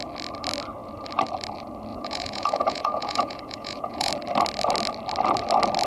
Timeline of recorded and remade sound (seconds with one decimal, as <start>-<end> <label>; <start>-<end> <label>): 0.0-1.9 recorded; 1.9-4.1 remade; 4.1-5.9 recorded

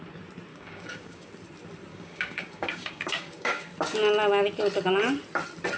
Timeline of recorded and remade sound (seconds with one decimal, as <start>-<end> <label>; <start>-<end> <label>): 0.0-0.5 recorded; 0.5-1.3 remade; 1.3-1.9 recorded; 1.9-3.7 remade; 3.7-5.8 recorded

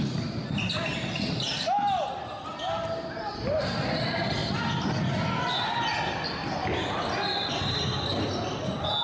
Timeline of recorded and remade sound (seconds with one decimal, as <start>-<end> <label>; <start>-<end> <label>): 0.0-9.0 recorded